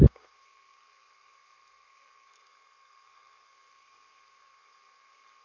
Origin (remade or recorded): remade